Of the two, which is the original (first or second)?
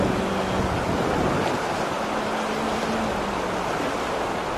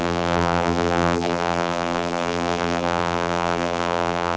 first